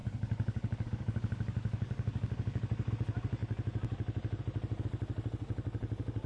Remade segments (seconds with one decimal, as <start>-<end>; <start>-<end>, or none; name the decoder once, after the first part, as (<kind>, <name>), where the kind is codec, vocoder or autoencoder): 0.0-2.9 (codec, DAC)